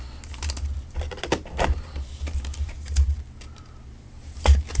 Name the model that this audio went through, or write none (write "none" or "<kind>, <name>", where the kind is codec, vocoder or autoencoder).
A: none